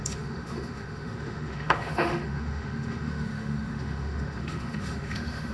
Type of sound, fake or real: fake